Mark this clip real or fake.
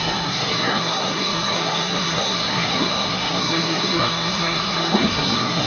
fake